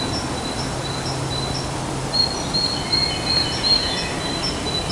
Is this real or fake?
real